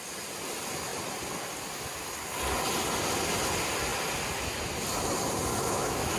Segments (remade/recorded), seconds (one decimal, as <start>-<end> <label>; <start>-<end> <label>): 0.0-5.5 recorded; 5.5-6.2 remade